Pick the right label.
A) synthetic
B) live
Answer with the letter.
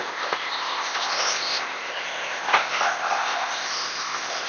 A